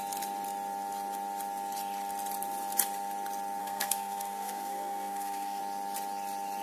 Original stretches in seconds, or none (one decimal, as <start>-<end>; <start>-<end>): 0.0-3.6; 5.6-6.6